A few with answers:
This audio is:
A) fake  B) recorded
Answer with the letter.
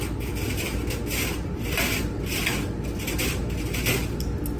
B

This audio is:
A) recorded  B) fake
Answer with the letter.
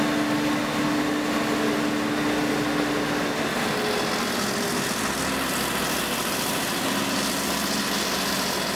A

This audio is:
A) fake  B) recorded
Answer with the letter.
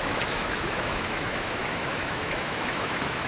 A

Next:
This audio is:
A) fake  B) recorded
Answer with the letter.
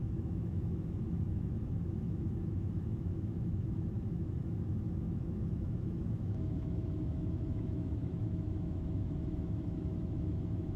A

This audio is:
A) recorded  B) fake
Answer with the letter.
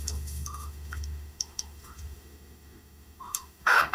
B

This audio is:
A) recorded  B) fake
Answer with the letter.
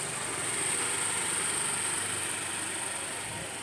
A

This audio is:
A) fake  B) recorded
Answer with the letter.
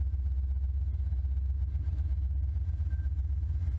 B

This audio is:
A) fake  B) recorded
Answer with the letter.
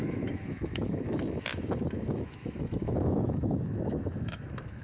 A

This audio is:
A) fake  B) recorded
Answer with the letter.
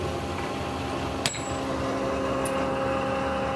B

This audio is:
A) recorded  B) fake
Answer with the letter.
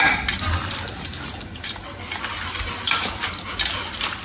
A